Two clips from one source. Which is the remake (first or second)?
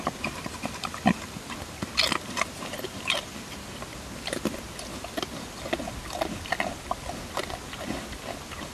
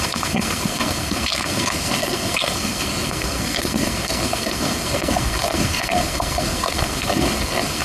second